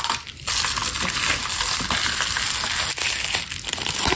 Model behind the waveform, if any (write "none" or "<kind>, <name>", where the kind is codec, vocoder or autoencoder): none